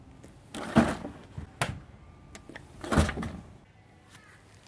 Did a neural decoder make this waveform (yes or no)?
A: no